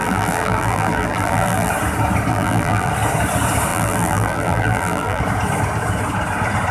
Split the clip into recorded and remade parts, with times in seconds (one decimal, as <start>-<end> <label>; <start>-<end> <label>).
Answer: 0.0-1.7 remade; 1.7-2.3 recorded; 2.3-2.9 remade; 2.9-3.7 recorded; 3.7-5.2 remade; 5.2-6.7 recorded